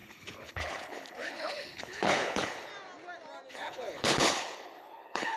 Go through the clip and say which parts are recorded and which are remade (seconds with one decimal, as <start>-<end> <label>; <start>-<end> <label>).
0.0-2.7 remade; 2.7-3.5 recorded; 3.5-5.4 remade